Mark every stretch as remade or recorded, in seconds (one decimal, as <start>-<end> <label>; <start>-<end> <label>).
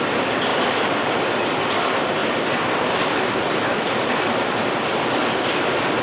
0.0-6.0 remade